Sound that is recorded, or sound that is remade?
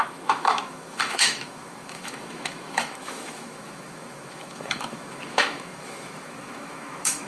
remade